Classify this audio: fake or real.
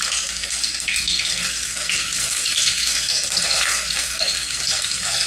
fake